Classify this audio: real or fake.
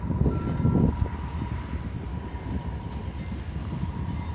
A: real